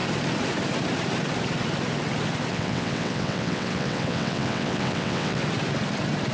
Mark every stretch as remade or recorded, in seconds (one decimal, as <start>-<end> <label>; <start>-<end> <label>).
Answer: 0.0-2.5 recorded; 2.5-5.4 remade; 5.4-6.3 recorded